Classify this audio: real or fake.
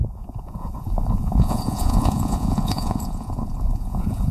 fake